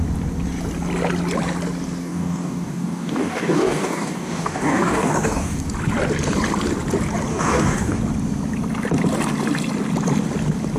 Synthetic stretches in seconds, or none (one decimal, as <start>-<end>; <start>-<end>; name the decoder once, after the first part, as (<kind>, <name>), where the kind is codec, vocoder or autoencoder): 2.0-5.6 (codec, DAC); 7.3-8.0